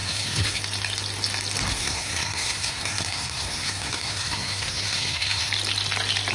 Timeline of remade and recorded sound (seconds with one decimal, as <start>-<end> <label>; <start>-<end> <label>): 0.0-0.6 remade; 0.6-1.7 recorded; 1.7-5.5 remade; 5.5-6.3 recorded